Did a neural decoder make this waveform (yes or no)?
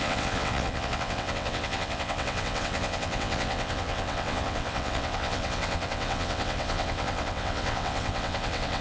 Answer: yes